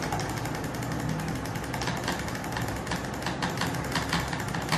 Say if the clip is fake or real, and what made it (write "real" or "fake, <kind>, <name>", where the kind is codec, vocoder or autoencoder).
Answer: real